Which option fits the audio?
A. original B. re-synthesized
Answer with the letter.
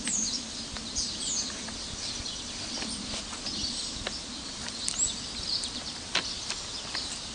A